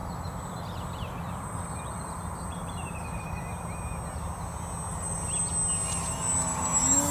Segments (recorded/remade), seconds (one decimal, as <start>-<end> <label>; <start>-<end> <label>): 0.0-3.2 remade; 3.2-4.9 recorded; 4.9-5.4 remade; 5.4-7.1 recorded